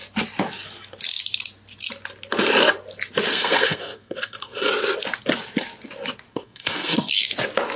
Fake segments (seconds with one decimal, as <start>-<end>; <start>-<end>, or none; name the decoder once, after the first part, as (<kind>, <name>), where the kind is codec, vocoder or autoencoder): 3.3-4.7 (codec, SNAC); 6.3-7.1

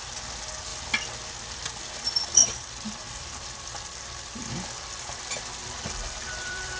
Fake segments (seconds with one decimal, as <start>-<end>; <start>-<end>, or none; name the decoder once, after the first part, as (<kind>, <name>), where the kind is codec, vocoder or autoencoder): 2.4-4.5 (vocoder, BigVGAN v2); 5.6-6.8

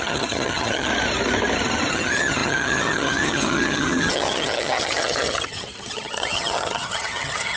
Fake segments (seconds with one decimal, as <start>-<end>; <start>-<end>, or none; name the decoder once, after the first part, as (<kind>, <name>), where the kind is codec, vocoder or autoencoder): 0.0-0.9 (vocoder, HiFi-GAN); 1.9-7.6

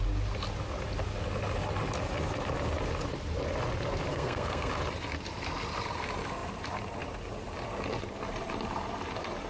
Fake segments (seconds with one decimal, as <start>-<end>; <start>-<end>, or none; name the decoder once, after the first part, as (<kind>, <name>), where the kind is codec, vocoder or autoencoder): 4.1-4.7 (codec, SNAC)

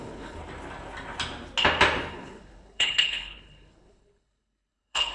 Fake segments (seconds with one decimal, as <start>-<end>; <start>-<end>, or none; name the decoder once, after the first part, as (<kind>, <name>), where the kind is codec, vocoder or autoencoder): 0.0-0.4 (codec, HILCodec); 2.1-5.1

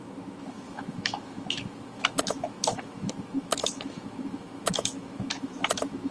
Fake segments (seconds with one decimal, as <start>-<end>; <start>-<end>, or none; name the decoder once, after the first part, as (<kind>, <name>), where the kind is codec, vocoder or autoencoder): 0.0-6.1 (autoencoder, DAC-VAE)